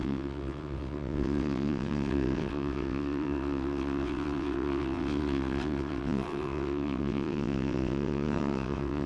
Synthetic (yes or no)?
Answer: yes